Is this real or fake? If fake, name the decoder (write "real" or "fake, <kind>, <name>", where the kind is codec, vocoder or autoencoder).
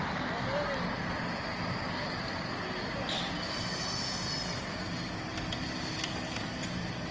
real